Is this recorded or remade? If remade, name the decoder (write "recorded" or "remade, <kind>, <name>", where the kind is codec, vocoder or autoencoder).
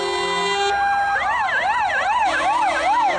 recorded